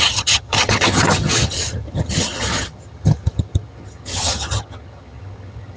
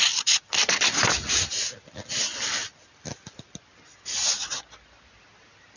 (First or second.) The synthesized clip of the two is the first